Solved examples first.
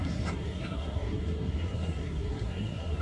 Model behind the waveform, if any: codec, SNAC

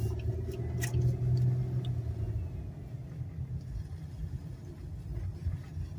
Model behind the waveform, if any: none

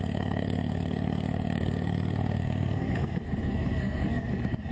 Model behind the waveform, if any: codec, SNAC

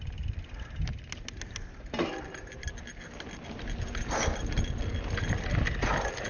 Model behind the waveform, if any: none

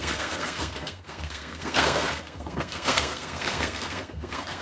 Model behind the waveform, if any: codec, SNAC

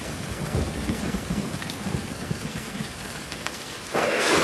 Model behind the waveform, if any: codec, SNAC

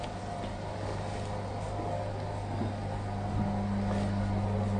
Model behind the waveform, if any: none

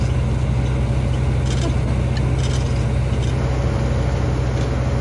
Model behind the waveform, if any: none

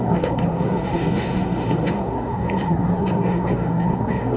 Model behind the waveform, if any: codec, SNAC